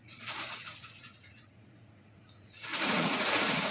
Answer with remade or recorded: remade